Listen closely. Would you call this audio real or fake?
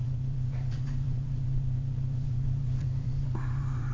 fake